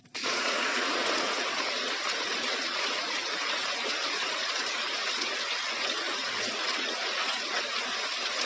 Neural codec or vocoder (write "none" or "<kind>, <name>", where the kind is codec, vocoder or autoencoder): vocoder, Vocos